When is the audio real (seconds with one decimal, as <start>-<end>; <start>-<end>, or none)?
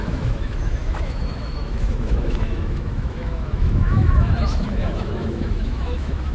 none